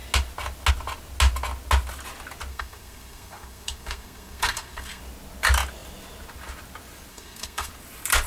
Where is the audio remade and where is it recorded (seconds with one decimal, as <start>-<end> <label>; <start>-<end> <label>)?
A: 0.0-2.5 recorded; 2.5-5.0 remade; 5.0-7.1 recorded; 7.1-7.7 remade; 7.7-8.3 recorded

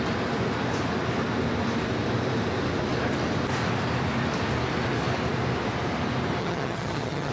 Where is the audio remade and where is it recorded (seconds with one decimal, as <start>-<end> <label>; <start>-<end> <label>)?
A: 0.0-6.4 recorded; 6.4-7.3 remade

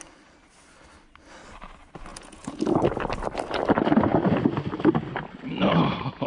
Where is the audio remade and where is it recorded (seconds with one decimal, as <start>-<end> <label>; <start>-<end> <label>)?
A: 0.0-2.1 recorded; 2.1-2.6 remade; 2.6-6.3 recorded